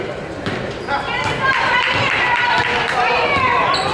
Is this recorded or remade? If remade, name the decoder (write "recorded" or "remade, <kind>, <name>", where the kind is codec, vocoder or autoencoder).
remade, vocoder, BigVGAN v2